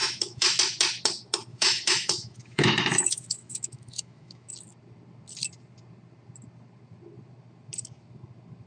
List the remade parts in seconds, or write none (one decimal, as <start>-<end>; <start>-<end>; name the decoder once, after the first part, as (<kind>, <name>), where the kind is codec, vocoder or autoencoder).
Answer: 0.0-0.6 (autoencoder, DAC-VAE); 1.5-4.5